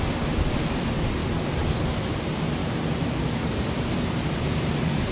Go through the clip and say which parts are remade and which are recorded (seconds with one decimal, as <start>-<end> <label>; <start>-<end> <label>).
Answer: 0.0-1.2 remade; 1.2-2.0 recorded; 2.0-5.1 remade